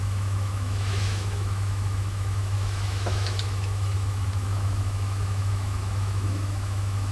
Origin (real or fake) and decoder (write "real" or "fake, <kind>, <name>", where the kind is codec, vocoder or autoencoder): fake, autoencoder, DAC-VAE